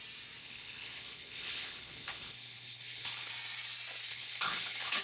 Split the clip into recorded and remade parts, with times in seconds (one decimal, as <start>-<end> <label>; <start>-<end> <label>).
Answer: 0.0-0.4 recorded; 0.4-3.3 remade; 3.3-4.1 recorded; 4.1-5.0 remade